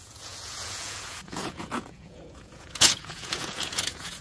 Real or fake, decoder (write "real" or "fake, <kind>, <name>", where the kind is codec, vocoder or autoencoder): fake, vocoder, Vocos